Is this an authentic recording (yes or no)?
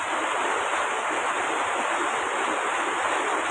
no